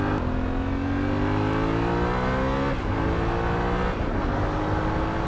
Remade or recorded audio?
recorded